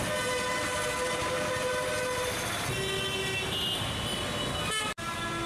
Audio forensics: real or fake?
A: real